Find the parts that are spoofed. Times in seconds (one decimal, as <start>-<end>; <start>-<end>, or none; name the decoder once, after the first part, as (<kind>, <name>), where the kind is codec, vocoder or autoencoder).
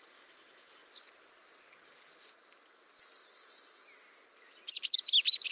none